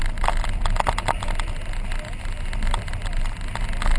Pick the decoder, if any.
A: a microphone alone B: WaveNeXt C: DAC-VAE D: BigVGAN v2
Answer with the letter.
A